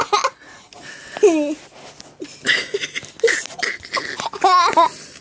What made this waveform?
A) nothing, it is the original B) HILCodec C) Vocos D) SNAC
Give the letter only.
A